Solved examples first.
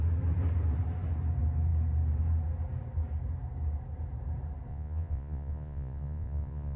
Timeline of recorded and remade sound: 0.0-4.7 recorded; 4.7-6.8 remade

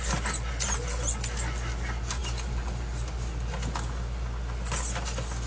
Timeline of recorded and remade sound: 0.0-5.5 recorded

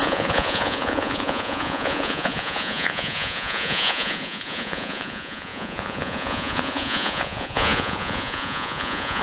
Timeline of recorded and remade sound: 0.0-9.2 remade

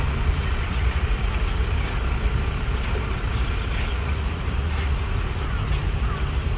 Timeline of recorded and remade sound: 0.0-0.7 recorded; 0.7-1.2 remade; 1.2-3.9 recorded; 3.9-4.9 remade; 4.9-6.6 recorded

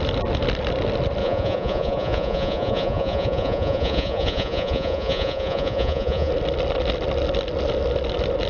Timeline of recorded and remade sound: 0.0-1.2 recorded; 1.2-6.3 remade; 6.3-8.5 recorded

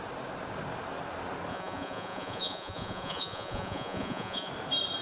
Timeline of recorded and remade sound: 0.0-1.5 recorded; 1.5-4.5 remade; 4.5-5.0 recorded

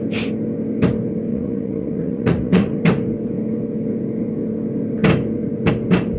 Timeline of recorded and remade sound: 0.0-1.3 recorded; 1.3-2.8 remade; 2.8-6.2 recorded

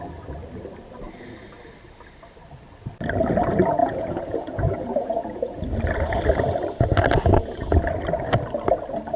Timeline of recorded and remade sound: 0.0-3.8 recorded; 3.8-5.6 remade; 5.6-9.2 recorded